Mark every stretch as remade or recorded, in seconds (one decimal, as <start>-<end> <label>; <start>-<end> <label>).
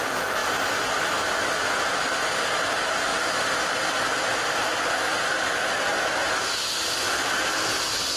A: 0.0-0.4 recorded; 0.4-2.1 remade; 2.1-3.1 recorded; 3.1-4.1 remade; 4.1-5.9 recorded; 5.9-7.4 remade; 7.4-8.2 recorded